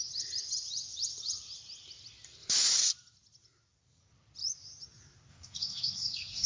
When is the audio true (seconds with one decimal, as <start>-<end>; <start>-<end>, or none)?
0.0-5.3